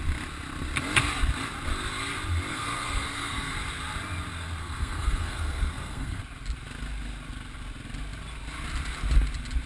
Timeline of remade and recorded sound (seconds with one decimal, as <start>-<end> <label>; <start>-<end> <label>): 0.0-2.5 recorded; 2.5-3.5 remade; 3.5-4.6 recorded; 4.6-6.2 remade; 6.2-9.7 recorded